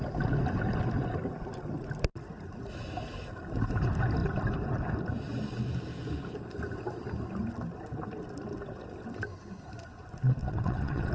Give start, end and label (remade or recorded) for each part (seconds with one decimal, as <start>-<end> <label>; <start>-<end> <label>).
0.0-10.4 recorded; 10.4-11.1 remade